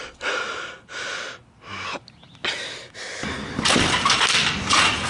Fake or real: real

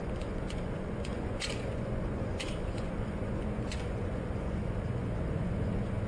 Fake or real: fake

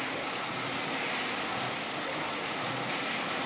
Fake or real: real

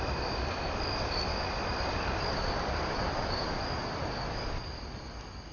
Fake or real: real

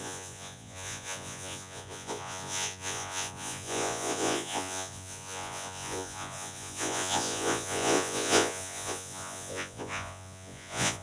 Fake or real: fake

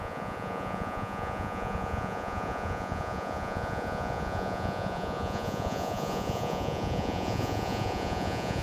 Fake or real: fake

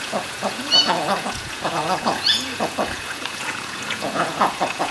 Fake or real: fake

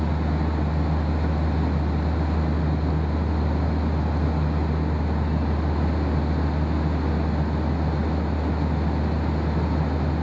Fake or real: real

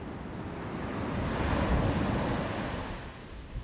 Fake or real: real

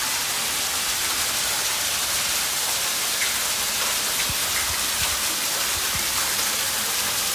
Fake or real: real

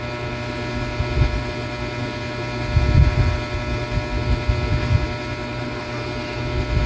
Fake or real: real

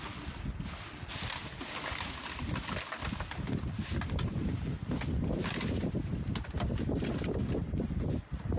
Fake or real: real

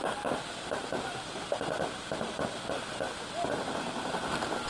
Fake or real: real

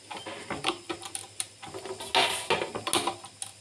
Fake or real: real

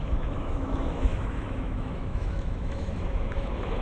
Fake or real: fake